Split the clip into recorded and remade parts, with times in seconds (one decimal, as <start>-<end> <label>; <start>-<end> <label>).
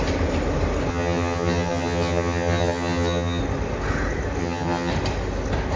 0.0-0.9 recorded; 0.9-3.4 remade; 3.4-4.4 recorded; 4.4-4.9 remade; 4.9-5.8 recorded